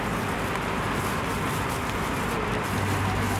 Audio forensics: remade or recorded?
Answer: recorded